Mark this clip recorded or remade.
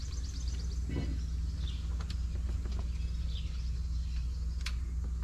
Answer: recorded